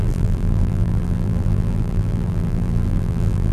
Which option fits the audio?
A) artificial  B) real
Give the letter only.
A